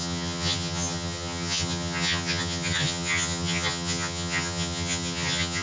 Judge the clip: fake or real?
fake